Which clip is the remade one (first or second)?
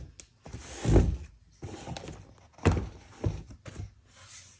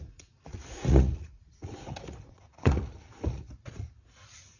second